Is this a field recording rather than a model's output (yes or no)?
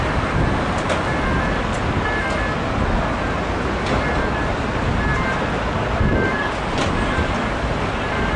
yes